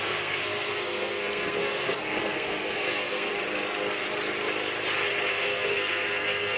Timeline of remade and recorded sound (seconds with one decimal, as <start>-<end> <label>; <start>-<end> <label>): 0.0-3.3 remade; 3.3-5.3 recorded; 5.3-6.6 remade